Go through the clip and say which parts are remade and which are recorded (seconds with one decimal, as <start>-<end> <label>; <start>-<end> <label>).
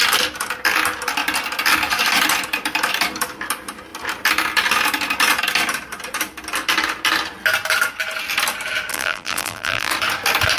0.0-8.9 recorded; 8.9-9.9 remade; 9.9-10.6 recorded